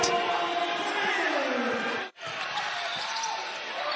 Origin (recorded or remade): recorded